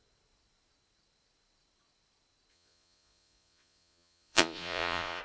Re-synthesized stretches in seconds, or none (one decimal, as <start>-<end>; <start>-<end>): 2.5-5.2